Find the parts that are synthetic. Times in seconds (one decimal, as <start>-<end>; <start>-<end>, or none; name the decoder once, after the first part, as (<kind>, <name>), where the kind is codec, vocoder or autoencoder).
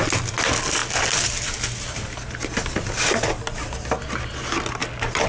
none